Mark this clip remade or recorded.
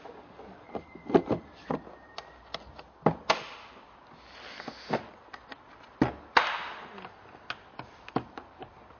recorded